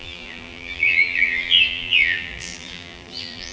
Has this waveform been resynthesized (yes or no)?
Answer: yes